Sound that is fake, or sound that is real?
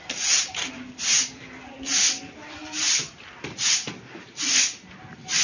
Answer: real